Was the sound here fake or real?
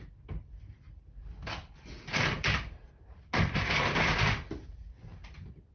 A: real